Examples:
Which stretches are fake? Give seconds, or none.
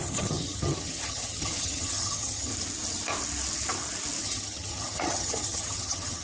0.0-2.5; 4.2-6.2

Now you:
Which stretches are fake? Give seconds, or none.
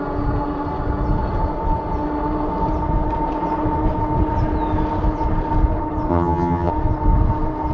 6.1-6.7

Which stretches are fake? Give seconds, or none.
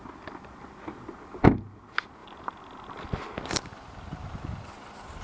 none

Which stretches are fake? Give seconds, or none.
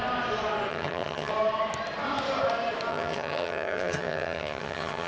0.7-1.3; 2.9-5.1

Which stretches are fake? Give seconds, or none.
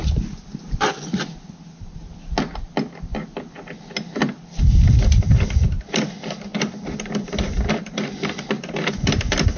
none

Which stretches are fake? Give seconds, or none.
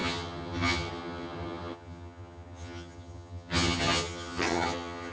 0.0-5.1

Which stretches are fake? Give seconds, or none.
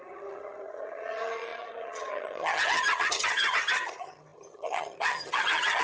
0.0-5.8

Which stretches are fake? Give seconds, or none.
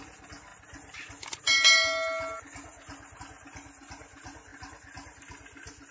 none